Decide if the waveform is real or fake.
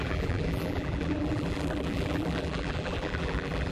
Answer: fake